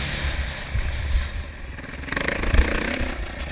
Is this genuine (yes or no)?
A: yes